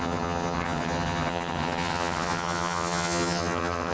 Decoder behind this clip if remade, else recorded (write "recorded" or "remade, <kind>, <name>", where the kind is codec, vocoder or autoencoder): remade, vocoder, HiFi-GAN